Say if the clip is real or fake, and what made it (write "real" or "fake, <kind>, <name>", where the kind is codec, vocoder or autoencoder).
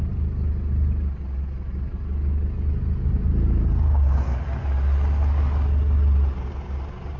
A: real